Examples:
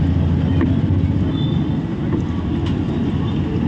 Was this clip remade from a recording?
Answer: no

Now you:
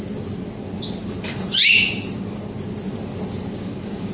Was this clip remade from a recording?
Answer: no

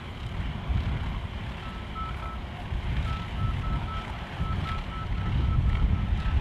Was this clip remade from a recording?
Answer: no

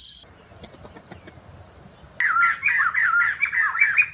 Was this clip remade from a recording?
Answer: no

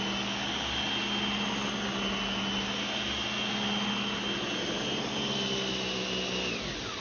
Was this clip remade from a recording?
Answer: no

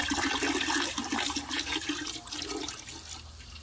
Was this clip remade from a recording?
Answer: no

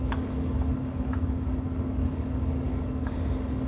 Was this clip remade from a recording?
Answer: yes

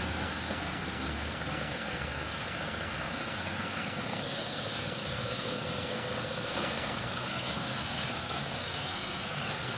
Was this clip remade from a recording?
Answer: yes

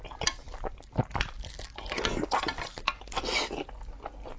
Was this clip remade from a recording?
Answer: no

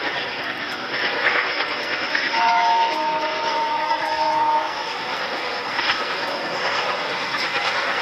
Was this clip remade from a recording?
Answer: yes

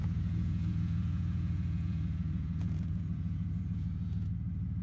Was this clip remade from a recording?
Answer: yes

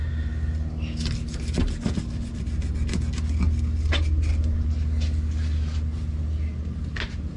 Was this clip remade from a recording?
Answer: no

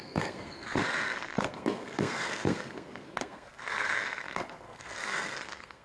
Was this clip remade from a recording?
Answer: yes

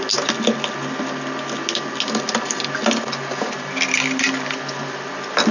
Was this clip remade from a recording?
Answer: no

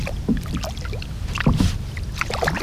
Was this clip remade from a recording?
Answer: no